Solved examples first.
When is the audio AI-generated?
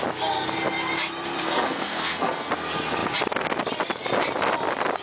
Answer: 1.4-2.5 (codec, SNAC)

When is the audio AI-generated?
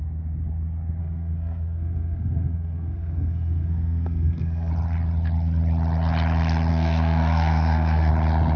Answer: 1.0-4.7 (codec, SNAC); 6.7-8.1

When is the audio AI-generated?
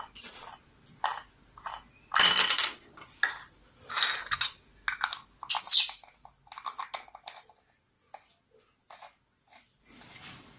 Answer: none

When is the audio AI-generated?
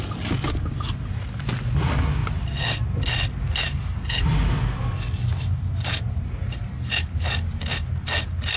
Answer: none